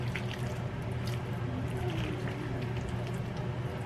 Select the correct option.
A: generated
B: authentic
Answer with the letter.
B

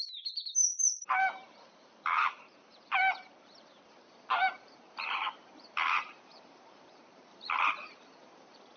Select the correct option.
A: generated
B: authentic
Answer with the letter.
A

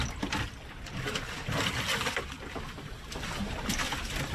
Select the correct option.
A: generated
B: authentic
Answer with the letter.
B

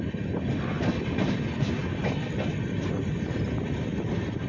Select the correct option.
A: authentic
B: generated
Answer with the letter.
A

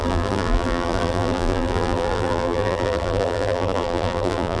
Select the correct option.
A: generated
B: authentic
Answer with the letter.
A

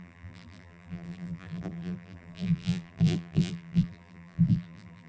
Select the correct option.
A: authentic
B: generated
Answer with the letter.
B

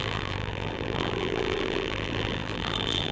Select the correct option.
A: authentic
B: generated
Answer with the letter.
B